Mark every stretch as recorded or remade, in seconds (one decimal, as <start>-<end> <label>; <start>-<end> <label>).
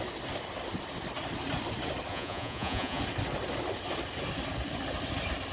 0.0-2.1 recorded; 2.1-3.0 remade; 3.0-5.5 recorded